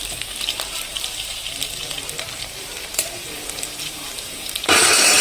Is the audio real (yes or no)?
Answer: no